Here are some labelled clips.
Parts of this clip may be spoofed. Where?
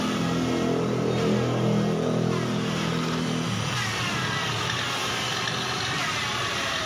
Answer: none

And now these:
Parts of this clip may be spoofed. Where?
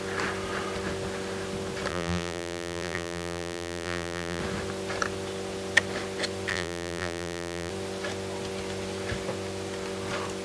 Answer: 1.9-4.4 (vocoder, BigVGAN v2); 6.5-7.7